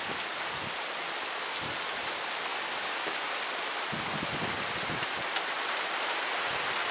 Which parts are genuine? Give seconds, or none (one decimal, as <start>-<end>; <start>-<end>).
0.0-6.9